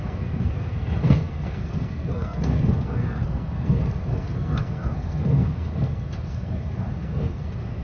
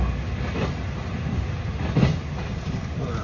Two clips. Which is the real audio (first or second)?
second